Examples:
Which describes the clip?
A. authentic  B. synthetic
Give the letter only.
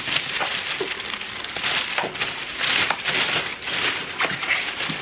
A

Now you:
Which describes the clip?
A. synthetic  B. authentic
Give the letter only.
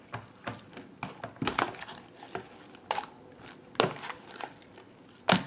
B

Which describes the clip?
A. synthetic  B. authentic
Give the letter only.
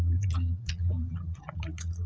A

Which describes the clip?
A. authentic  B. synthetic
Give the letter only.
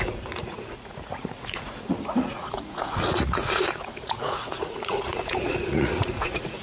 B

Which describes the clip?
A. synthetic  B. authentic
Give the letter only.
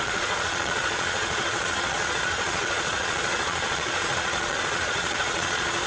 A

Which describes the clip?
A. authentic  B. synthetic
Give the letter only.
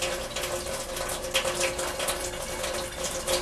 A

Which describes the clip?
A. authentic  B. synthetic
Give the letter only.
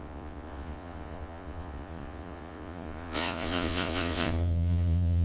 B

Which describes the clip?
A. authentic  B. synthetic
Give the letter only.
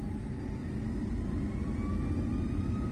A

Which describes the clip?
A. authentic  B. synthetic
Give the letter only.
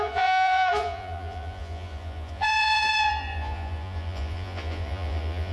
B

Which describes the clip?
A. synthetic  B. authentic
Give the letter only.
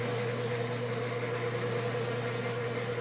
B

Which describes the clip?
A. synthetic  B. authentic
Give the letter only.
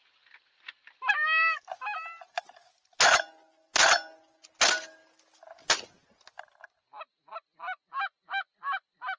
B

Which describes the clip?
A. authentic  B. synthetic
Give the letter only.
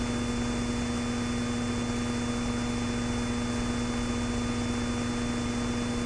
A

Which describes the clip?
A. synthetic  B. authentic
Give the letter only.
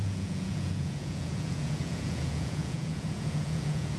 A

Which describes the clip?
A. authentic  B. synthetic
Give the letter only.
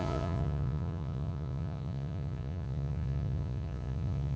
B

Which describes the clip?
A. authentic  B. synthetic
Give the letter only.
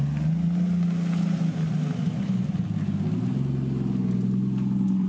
A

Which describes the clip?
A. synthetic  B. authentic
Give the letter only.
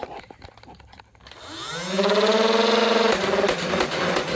B